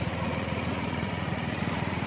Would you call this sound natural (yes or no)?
no